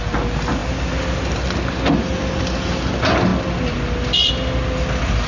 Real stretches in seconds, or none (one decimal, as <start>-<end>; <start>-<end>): 0.0-5.3